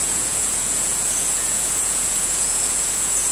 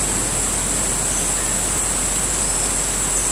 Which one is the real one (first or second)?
second